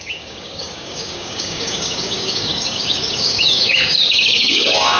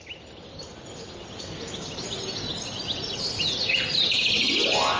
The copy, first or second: first